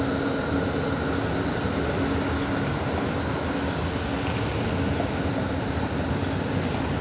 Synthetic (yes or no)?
no